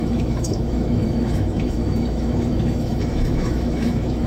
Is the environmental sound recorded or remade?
remade